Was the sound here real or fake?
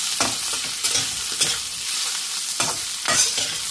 real